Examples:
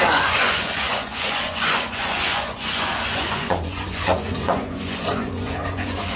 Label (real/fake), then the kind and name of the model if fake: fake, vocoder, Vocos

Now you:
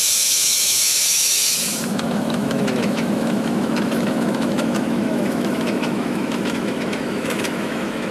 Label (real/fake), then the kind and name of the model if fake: fake, autoencoder, DAC-VAE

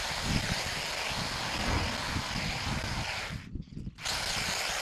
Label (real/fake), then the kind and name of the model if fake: real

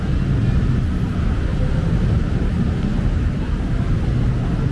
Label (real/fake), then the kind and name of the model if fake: real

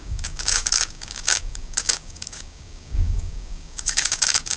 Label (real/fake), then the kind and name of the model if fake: fake, codec, DAC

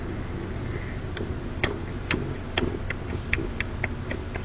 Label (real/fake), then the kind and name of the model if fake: real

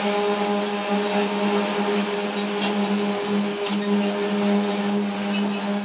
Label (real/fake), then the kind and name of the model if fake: real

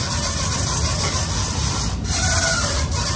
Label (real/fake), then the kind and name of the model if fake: fake, vocoder, BigVGAN v2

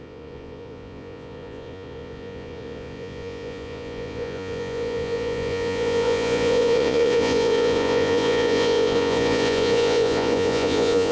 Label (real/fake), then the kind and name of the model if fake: fake, vocoder, Vocos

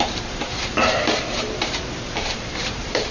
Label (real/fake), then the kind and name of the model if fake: fake, vocoder, BigVGAN v2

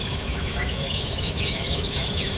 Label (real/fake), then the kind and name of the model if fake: fake, autoencoder, DAC-VAE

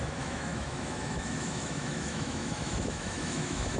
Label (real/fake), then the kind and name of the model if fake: fake, autoencoder, DAC-VAE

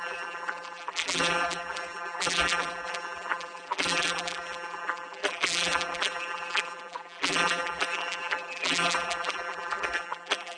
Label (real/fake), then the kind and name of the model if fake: fake, vocoder, BigVGAN v2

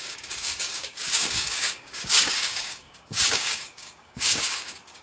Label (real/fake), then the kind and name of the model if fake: fake, codec, DAC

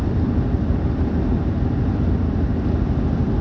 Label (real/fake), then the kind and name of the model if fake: real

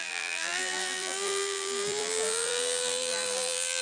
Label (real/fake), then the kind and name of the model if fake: fake, vocoder, BigVGAN v2